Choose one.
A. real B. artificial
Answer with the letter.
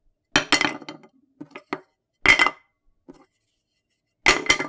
A